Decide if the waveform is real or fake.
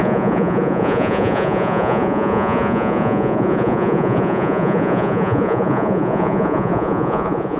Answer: fake